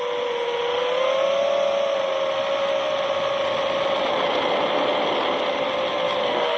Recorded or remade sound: recorded